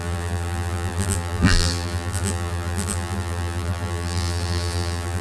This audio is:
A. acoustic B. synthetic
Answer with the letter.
B